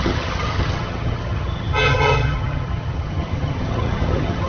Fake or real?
fake